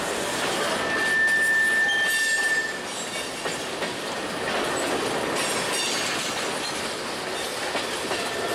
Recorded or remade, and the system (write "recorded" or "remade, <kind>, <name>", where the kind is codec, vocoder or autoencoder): recorded